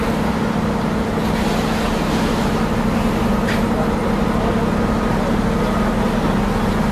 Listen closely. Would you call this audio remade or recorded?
recorded